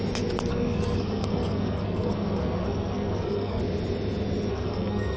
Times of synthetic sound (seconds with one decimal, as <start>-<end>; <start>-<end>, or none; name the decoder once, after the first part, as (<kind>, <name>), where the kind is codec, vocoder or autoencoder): 0.5-3.6 (codec, SNAC); 4.5-5.2